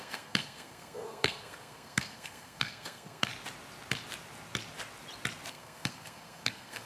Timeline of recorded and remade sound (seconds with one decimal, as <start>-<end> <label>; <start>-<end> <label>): 0.0-3.3 remade; 3.3-5.5 recorded; 5.5-6.9 remade